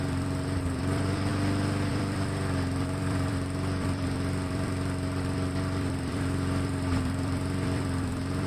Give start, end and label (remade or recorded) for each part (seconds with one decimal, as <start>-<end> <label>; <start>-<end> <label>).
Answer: 0.0-1.3 remade; 1.3-1.9 recorded; 1.9-8.5 remade